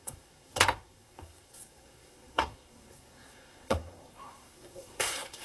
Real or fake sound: fake